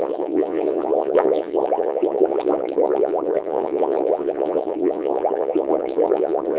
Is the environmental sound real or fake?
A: fake